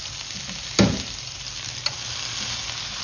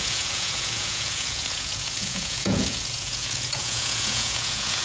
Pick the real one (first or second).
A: first